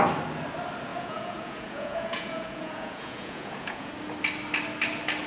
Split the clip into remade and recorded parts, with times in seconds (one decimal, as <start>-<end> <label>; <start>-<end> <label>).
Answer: 0.0-0.9 recorded; 0.9-3.9 remade; 3.9-5.3 recorded